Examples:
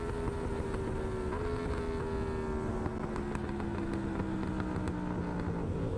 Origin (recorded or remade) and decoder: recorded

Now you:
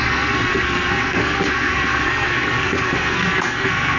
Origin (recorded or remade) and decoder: remade, codec, SNAC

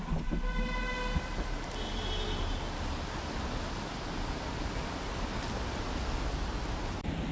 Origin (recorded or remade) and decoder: recorded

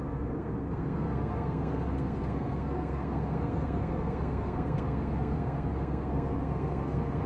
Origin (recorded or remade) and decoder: remade, codec, SNAC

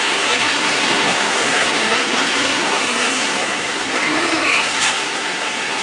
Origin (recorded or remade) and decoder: remade, codec, SNAC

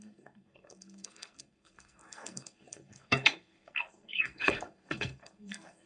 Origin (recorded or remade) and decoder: remade, codec, SNAC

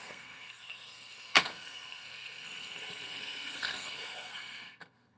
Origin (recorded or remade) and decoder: remade, codec, SNAC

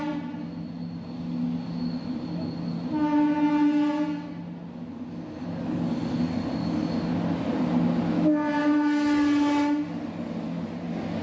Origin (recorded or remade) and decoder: recorded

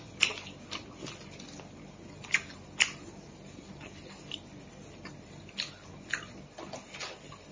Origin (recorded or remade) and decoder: recorded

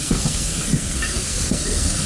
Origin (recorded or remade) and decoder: remade, codec, SNAC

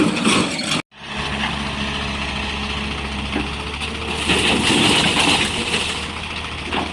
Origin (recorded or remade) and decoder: recorded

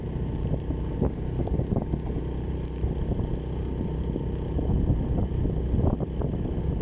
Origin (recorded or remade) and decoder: recorded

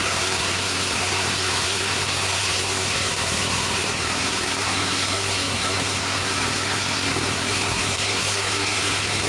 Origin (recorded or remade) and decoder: remade, codec, SNAC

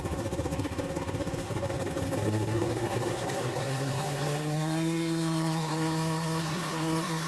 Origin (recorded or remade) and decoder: remade, codec, SNAC